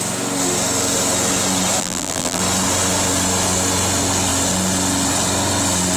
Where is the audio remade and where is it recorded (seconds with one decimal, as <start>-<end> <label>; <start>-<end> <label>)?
0.0-1.8 recorded; 1.8-2.4 remade; 2.4-6.0 recorded